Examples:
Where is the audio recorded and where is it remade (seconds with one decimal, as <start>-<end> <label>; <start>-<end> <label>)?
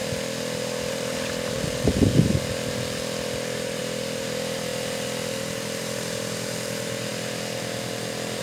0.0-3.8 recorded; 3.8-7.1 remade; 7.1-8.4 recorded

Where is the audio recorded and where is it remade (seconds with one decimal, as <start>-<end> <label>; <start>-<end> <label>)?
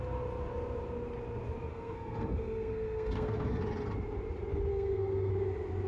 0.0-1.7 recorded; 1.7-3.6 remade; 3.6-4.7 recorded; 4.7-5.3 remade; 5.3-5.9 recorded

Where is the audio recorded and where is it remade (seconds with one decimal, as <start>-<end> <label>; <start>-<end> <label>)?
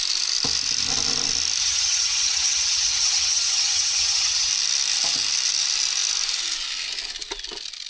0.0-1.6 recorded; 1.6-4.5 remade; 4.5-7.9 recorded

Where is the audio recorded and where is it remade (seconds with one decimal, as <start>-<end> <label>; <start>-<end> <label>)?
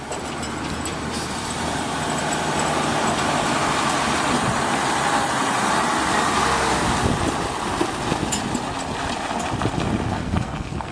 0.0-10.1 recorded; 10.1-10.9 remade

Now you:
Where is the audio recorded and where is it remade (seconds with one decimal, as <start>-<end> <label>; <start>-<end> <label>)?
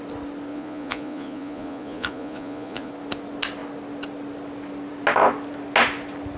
0.0-0.5 recorded; 0.5-2.9 remade; 2.9-6.4 recorded